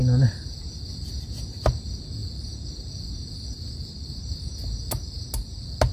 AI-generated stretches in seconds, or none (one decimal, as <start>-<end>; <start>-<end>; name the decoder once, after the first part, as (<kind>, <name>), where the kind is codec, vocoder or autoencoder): none